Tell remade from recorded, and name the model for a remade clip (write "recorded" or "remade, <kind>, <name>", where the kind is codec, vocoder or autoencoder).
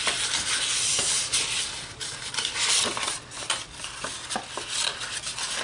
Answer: recorded